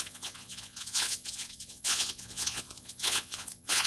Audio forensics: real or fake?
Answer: fake